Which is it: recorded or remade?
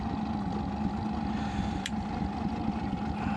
recorded